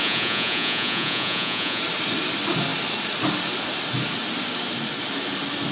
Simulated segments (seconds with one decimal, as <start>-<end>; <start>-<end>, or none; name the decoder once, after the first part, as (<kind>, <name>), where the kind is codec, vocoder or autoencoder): 0.0-1.8 (vocoder, Vocos)

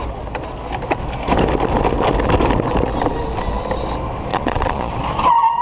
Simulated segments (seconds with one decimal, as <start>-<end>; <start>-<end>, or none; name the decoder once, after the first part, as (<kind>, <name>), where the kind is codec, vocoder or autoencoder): 4.3-4.9 (vocoder, Vocos)